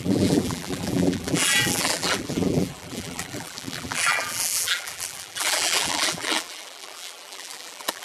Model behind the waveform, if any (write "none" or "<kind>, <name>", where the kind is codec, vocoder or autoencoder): vocoder, BigVGAN v2